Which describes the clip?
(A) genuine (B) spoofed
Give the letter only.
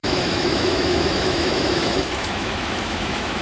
B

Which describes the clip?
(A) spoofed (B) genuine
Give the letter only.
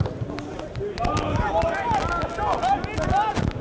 B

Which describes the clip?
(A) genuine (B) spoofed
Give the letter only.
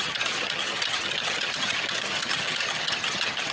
B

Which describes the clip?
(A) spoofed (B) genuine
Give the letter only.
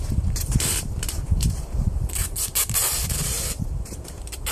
A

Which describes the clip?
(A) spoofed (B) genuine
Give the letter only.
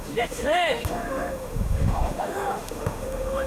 A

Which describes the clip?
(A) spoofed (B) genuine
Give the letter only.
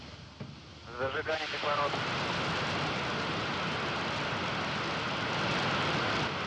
B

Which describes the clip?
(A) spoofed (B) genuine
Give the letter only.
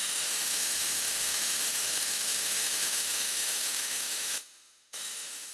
A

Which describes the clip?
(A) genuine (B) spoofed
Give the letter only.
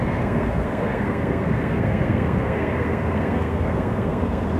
B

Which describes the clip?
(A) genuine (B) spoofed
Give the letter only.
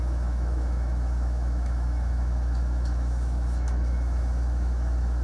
B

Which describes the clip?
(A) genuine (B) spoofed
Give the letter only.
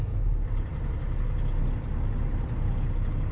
A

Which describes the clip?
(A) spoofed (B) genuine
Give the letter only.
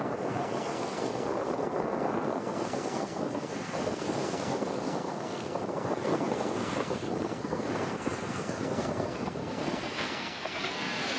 A